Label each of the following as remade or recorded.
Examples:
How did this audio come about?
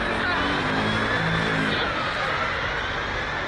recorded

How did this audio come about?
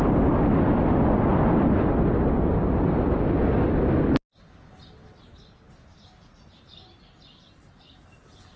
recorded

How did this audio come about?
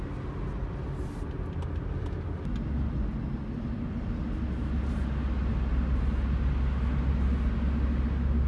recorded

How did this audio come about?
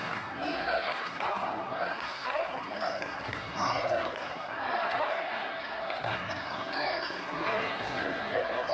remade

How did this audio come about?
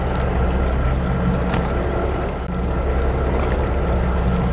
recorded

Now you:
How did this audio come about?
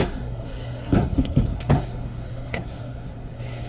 remade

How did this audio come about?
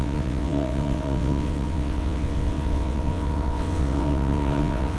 remade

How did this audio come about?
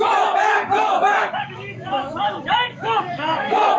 remade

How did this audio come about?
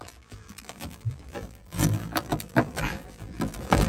remade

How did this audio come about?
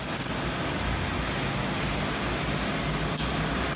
recorded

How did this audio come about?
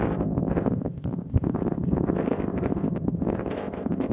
remade